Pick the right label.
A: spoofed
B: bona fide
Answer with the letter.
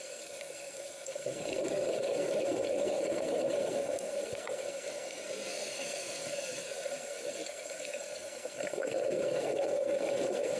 A